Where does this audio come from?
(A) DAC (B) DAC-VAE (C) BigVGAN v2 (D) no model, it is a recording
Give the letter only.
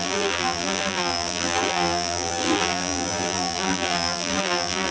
C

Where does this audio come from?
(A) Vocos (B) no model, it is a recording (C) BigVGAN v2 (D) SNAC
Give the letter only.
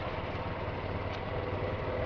B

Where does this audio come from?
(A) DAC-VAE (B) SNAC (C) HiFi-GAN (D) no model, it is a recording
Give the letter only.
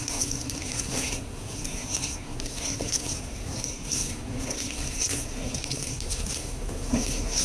B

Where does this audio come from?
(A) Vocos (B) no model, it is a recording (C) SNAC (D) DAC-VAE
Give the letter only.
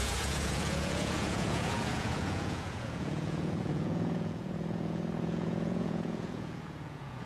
A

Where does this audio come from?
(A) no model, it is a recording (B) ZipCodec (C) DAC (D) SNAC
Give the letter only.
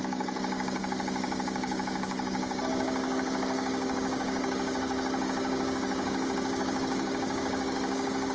C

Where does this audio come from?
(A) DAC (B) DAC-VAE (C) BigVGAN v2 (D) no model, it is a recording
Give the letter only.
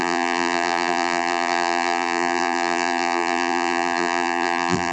C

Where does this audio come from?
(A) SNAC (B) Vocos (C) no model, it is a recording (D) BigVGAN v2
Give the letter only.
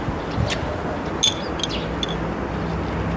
C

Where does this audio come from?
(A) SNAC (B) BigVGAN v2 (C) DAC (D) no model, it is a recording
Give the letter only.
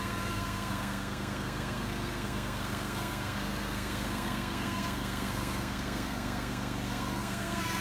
A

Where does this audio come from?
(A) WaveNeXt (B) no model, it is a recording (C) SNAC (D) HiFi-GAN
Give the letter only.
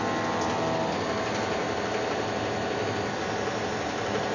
B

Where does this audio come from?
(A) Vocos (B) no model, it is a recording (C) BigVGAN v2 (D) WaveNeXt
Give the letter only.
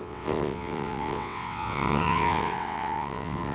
D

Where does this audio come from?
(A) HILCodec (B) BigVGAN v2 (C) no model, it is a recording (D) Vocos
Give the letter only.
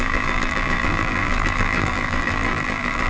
B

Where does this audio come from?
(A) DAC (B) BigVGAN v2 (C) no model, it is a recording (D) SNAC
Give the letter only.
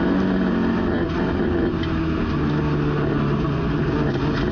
C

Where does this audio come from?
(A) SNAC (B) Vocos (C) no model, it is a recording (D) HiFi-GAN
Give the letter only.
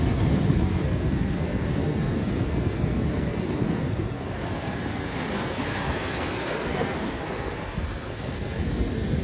A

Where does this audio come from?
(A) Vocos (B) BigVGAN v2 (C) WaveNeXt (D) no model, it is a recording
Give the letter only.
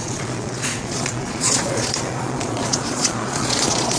A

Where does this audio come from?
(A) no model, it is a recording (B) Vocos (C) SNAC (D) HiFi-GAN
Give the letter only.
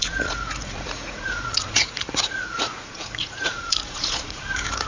B